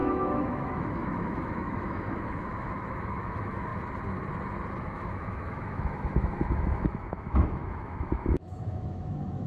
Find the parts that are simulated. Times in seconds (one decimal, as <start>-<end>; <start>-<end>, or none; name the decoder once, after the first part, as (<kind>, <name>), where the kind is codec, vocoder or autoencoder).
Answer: 0.0-3.7 (autoencoder, DAC-VAE); 4.8-9.5